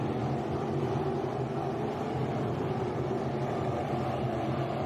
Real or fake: real